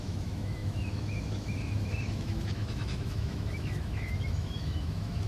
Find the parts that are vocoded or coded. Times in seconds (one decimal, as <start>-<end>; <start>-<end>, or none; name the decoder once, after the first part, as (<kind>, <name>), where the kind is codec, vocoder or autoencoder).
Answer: 0.0-5.3 (autoencoder, DAC-VAE)